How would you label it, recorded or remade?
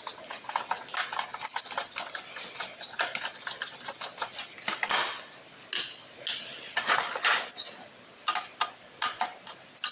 recorded